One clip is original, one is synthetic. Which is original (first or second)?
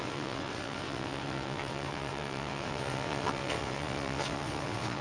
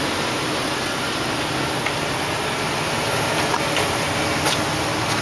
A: second